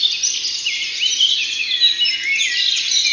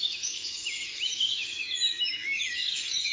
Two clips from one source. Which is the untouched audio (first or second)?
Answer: first